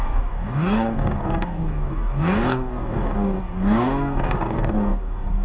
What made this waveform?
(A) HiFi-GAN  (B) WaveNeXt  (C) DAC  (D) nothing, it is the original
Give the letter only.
C